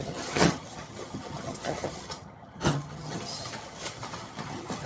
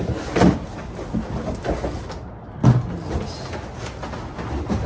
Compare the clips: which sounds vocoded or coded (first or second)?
first